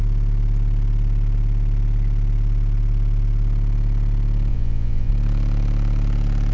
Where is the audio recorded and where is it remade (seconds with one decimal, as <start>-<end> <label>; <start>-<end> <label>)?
0.0-4.5 recorded; 4.5-5.1 remade; 5.1-6.5 recorded